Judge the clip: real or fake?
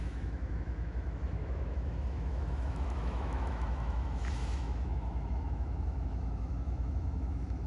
fake